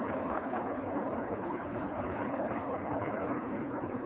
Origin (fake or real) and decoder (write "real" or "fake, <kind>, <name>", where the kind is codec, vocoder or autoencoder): fake, codec, HILCodec